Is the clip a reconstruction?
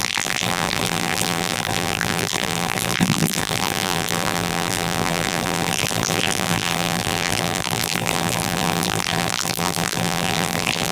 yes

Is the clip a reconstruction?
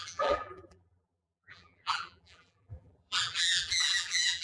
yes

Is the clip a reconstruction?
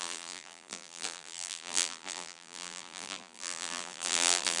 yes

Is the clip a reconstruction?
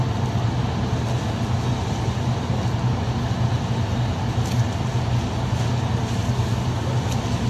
no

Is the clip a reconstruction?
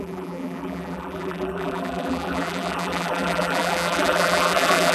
yes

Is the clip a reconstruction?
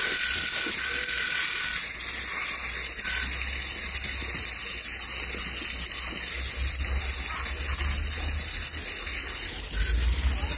no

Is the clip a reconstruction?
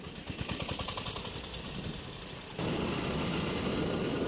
no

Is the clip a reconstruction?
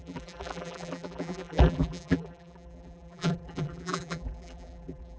yes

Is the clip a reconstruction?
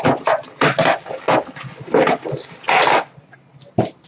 no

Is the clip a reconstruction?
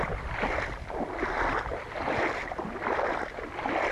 no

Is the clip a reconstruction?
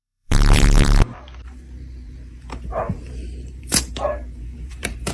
yes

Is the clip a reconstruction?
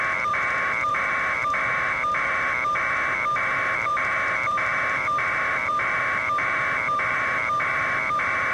yes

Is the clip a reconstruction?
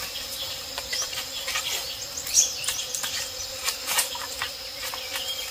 yes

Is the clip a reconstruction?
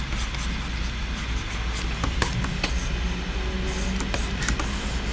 no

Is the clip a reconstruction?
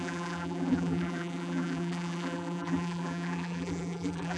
yes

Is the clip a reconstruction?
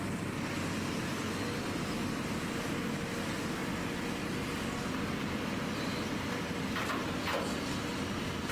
no